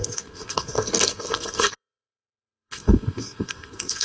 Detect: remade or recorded remade